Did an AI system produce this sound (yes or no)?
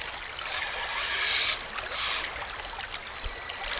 no